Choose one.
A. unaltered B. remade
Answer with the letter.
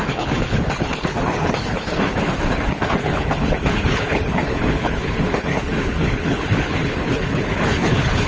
B